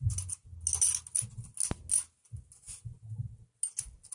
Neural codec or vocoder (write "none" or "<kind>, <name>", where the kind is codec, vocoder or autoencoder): none